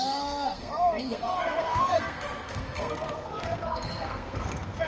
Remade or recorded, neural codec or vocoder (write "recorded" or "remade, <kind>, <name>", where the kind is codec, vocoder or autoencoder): remade, codec, SNAC